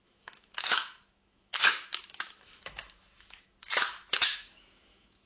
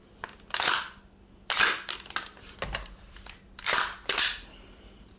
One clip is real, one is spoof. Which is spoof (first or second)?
first